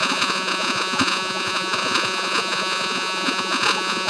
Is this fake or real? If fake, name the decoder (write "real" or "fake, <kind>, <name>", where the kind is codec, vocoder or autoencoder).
fake, vocoder, Vocos